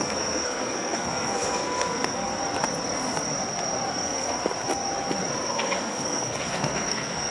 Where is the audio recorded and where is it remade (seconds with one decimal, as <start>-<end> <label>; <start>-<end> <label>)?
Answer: 0.0-2.4 remade; 2.4-3.9 recorded; 3.9-4.4 remade; 4.4-5.5 recorded; 5.5-7.3 remade